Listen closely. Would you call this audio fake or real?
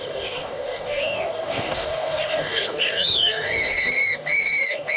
fake